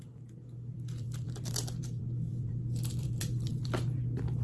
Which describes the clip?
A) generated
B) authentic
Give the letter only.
A